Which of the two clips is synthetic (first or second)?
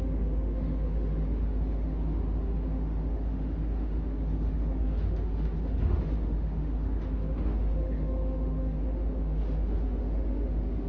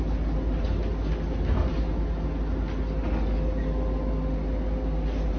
first